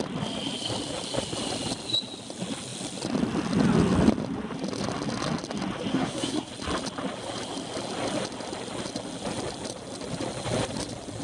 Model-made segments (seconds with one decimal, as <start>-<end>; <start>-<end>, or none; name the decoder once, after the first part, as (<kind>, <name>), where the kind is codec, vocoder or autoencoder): 5.9-6.5 (codec, SNAC)